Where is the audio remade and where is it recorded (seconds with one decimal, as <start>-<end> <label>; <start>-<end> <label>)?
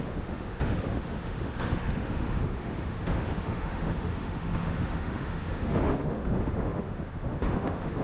0.0-8.0 remade